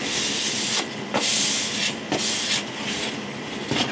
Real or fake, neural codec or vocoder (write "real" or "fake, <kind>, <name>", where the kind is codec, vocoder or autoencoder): real